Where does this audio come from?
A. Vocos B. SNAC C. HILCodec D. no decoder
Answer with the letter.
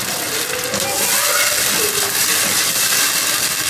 D